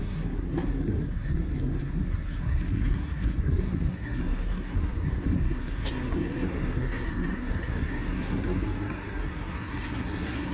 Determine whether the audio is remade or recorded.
remade